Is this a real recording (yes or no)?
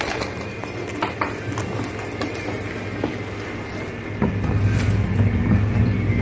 yes